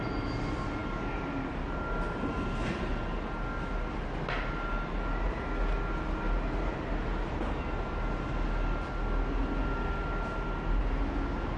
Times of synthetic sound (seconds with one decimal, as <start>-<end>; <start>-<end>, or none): none